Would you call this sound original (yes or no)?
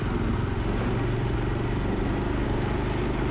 yes